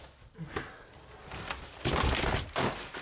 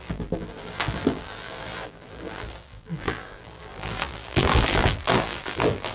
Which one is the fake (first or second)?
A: second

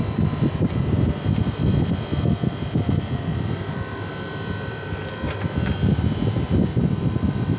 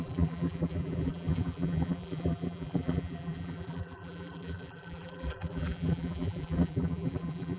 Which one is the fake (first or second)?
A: second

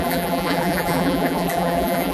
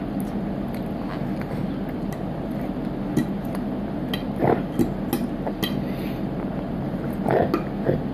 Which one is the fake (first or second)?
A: first